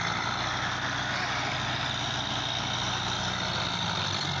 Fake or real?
real